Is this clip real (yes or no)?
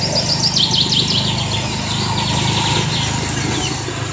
yes